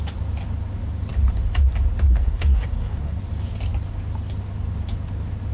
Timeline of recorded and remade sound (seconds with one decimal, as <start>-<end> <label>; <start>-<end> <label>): 0.0-2.1 recorded; 2.1-3.2 remade; 3.2-5.5 recorded